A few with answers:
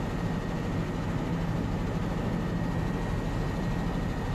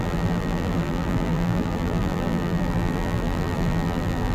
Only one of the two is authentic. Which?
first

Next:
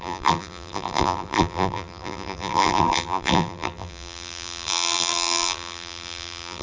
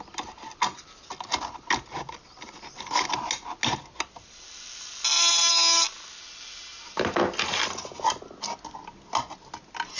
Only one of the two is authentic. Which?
second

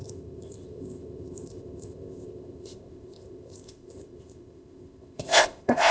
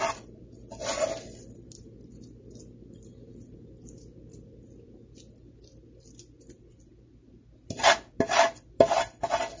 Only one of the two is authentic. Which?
second